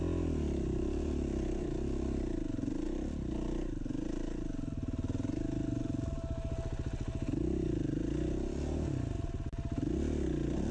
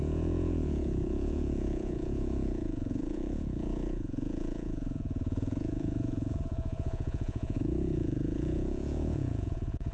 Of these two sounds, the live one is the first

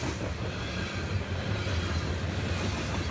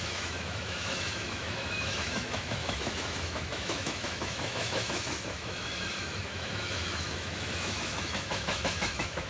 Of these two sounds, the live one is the first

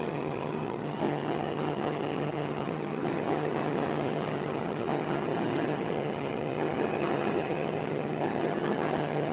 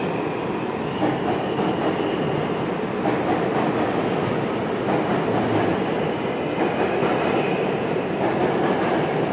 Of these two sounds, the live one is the second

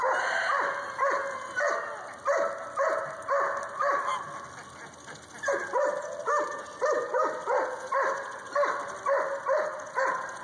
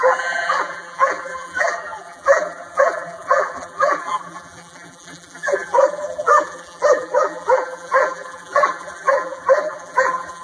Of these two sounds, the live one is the first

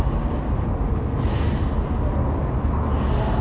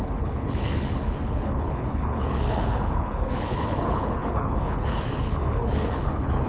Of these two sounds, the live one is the first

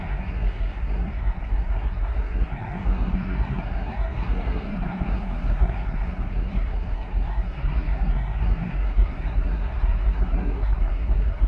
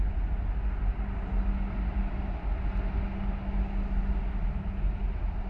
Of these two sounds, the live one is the second